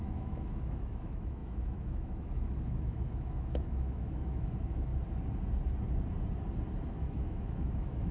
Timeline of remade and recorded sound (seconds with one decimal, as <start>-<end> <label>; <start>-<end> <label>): 0.0-4.9 remade; 4.9-6.9 recorded; 6.9-8.1 remade

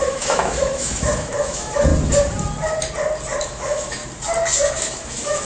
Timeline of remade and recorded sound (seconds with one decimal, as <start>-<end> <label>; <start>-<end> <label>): 0.0-1.9 remade; 1.9-3.4 recorded; 3.4-4.0 remade; 4.0-4.7 recorded; 4.7-5.4 remade

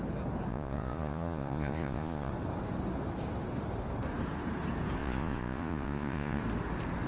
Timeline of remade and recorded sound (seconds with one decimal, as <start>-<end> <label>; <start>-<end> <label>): 0.0-0.5 recorded; 0.5-2.3 remade; 2.3-5.0 recorded; 5.0-6.4 remade; 6.4-7.1 recorded

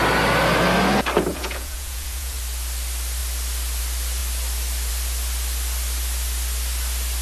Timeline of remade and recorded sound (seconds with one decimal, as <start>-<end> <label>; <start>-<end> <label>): 0.0-1.3 recorded; 1.3-2.4 remade; 2.4-7.2 recorded

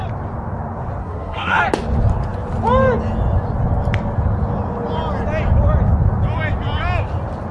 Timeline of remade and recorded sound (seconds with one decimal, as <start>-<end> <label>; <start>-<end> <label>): 0.0-1.0 recorded; 1.0-1.6 remade; 1.6-7.5 recorded

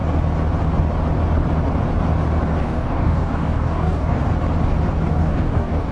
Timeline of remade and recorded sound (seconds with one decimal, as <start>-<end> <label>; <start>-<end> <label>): 0.0-2.6 recorded; 2.6-4.2 remade; 4.2-5.1 recorded; 5.1-5.9 remade

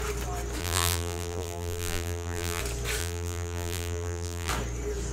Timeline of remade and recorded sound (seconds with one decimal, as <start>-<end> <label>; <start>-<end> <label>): 0.0-0.6 recorded; 0.6-2.6 remade; 2.6-3.0 recorded; 3.0-4.5 remade; 4.5-5.1 recorded